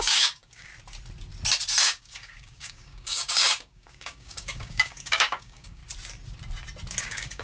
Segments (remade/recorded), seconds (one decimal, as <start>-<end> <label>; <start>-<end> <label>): 0.0-0.7 remade; 0.7-1.8 recorded; 1.8-5.8 remade; 5.8-7.0 recorded; 7.0-7.4 remade